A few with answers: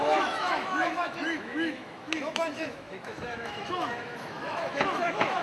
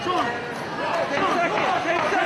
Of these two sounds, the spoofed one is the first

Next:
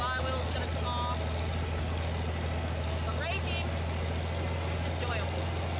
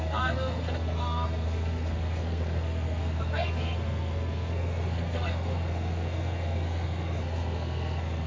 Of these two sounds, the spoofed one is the second